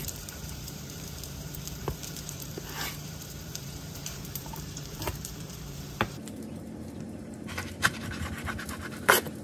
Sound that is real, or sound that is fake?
fake